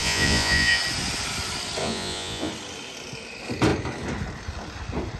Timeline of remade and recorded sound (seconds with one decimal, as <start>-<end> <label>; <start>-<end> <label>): 0.0-0.8 remade; 0.8-1.8 recorded; 1.8-2.5 remade; 2.5-5.2 recorded